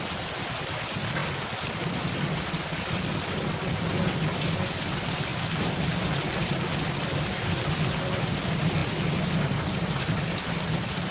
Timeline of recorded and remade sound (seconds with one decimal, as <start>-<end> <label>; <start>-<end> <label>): 0.0-11.1 recorded